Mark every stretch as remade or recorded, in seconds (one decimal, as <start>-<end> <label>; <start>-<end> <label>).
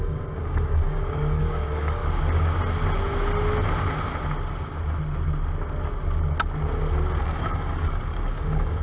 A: 0.0-2.0 remade; 2.0-7.2 recorded; 7.2-8.8 remade